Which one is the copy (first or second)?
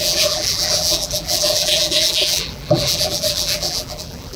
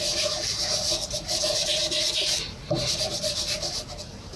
first